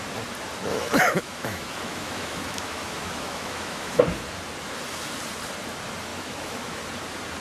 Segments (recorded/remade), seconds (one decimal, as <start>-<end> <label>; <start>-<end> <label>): 0.0-0.7 recorded; 0.7-4.0 remade; 4.0-6.1 recorded; 6.1-6.8 remade; 6.8-7.4 recorded